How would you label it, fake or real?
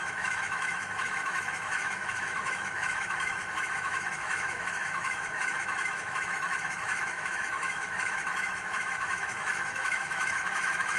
fake